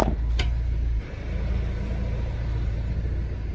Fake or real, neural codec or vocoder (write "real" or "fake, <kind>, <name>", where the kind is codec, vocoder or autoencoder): fake, vocoder, BigVGAN v2